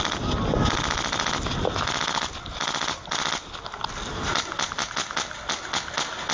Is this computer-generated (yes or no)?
no